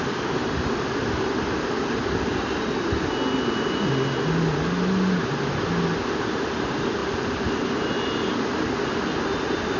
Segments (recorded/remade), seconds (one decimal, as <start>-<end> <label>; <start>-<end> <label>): 0.0-9.8 recorded